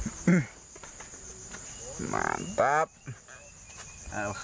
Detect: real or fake real